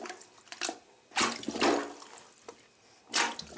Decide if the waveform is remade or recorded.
recorded